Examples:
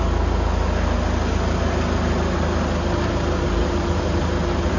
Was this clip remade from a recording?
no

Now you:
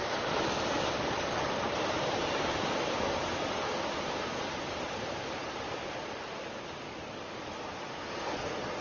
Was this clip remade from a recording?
no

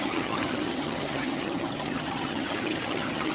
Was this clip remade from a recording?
yes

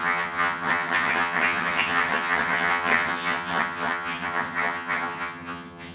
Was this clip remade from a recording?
yes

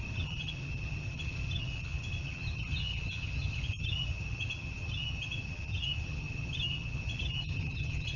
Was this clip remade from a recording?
yes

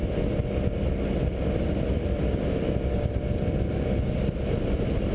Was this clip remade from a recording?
no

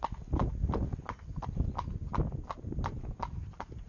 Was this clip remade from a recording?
no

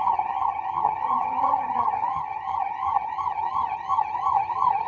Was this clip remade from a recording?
yes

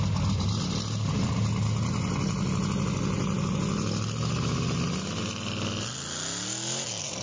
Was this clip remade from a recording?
no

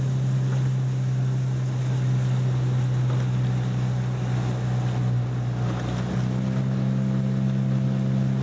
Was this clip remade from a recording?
no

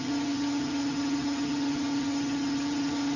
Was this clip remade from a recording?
yes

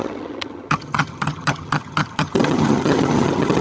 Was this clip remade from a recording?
yes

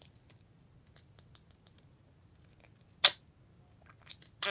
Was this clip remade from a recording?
no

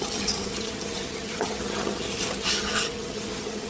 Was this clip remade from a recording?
yes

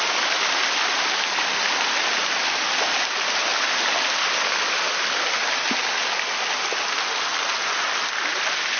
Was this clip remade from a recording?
no